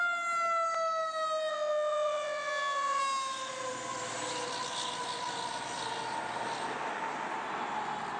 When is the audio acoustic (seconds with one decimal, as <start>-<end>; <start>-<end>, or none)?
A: 0.0-1.5; 3.0-8.2